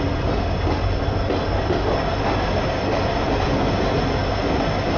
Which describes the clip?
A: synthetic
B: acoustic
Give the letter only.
B